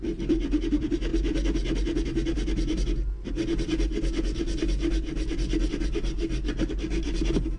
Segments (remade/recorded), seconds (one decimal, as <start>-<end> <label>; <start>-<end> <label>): 0.0-7.6 recorded